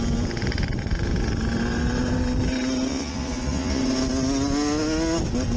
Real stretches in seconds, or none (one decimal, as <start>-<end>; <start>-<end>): 0.0-2.9; 3.8-5.6